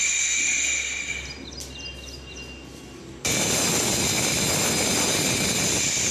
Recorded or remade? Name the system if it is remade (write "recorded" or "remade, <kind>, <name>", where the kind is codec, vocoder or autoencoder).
recorded